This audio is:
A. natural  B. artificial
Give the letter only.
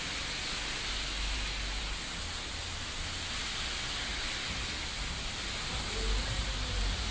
A